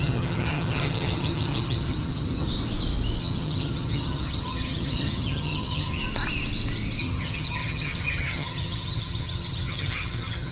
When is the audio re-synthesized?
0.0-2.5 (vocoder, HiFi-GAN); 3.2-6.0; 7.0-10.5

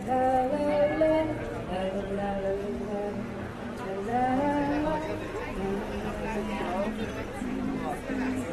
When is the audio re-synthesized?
0.0-4.1 (vocoder, BigVGAN v2); 7.1-8.5

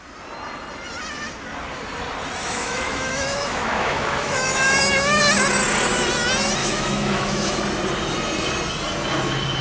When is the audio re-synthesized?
2.4-5.2 (autoencoder, DAC-VAE); 6.6-7.6

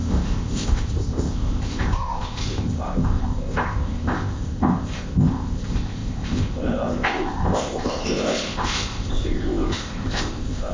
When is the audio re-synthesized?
0.0-10.7 (codec, ZipCodec)

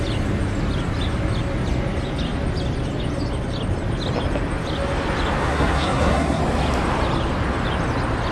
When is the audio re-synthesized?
5.4-6.4 (codec, SNAC)

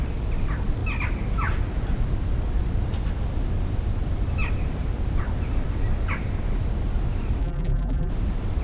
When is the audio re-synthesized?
7.4-8.1 (vocoder, BigVGAN v2)

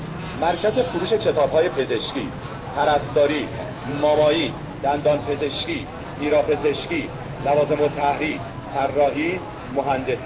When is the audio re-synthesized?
3.6-4.5 (autoencoder, DAC-VAE)